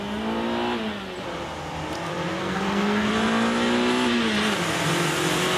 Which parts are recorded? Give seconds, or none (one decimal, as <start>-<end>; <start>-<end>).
0.0-2.4; 3.1-5.6